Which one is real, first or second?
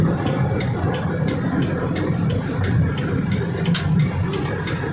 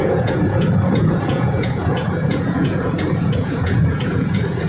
first